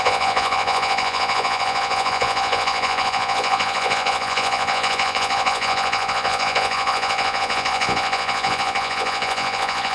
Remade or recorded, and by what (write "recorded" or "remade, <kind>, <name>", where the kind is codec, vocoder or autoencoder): remade, vocoder, Vocos